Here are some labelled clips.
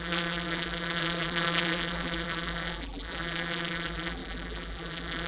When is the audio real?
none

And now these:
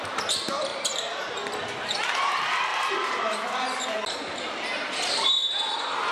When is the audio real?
0.0-0.7; 2.3-2.7; 3.4-6.1

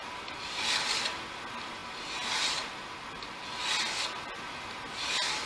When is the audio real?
0.0-5.5

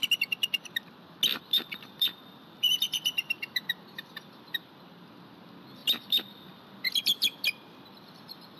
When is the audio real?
0.0-1.3; 4.7-5.8; 7.0-8.6